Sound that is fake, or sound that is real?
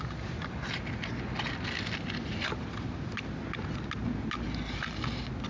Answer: real